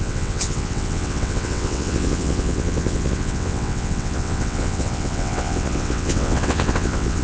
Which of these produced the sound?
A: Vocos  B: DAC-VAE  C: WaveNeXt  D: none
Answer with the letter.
C